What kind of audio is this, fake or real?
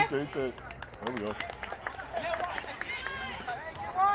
real